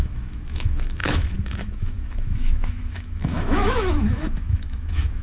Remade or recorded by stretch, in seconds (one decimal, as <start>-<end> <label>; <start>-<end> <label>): 0.0-5.2 remade